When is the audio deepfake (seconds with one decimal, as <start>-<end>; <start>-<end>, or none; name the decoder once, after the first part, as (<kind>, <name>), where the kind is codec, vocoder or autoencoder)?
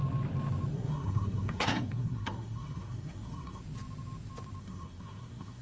0.7-3.6 (codec, SNAC); 4.6-5.6